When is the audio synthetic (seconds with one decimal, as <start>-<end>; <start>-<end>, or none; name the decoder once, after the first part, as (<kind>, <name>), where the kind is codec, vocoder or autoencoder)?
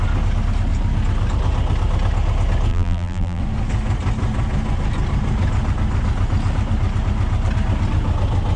2.7-3.4 (vocoder, BigVGAN v2)